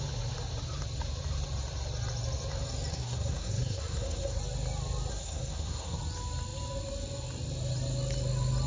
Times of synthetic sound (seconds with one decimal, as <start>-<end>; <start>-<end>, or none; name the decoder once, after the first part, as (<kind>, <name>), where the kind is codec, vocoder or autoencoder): 2.9-4.4 (codec, SNAC); 5.1-6.0